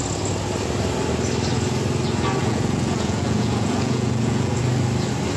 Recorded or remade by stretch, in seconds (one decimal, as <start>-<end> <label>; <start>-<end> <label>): 0.0-2.4 recorded; 2.4-4.6 remade; 4.6-5.4 recorded